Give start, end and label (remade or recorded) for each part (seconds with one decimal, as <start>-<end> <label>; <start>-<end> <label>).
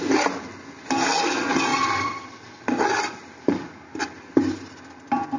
0.0-1.7 recorded; 1.7-4.3 remade; 4.3-5.4 recorded